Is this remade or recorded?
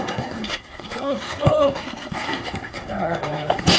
remade